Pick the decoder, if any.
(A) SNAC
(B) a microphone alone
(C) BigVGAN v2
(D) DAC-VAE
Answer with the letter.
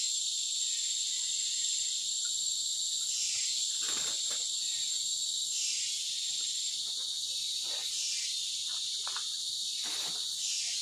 B